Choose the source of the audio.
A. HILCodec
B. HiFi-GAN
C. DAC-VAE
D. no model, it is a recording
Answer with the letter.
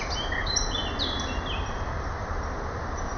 D